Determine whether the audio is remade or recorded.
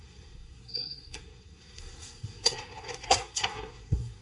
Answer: remade